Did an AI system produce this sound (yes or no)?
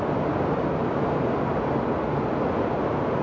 no